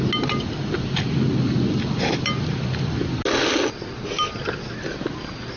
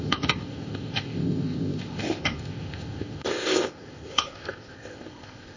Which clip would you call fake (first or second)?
second